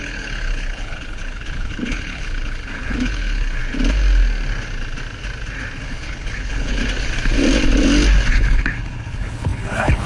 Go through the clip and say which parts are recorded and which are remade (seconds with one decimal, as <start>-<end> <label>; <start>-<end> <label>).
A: 0.0-3.6 remade; 3.6-5.8 recorded; 5.8-6.8 remade; 6.8-8.3 recorded; 8.3-10.1 remade

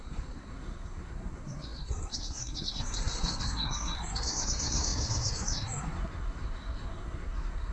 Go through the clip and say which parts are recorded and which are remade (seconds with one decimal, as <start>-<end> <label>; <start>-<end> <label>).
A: 0.0-7.7 remade